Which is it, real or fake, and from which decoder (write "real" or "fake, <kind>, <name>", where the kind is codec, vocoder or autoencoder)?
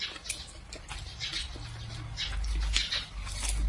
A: real